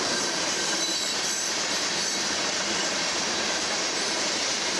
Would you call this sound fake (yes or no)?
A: yes